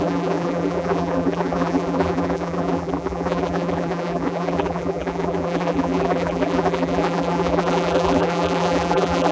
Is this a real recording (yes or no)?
no